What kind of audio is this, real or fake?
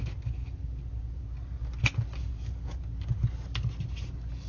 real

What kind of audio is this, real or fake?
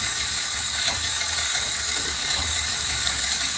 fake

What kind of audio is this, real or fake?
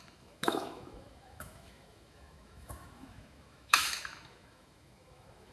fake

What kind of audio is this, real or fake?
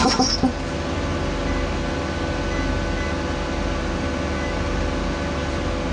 real